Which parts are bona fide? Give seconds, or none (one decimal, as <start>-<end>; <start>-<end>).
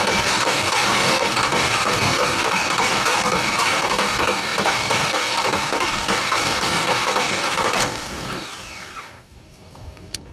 none